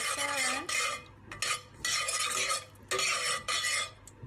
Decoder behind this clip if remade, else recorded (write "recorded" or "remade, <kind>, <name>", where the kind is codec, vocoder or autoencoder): recorded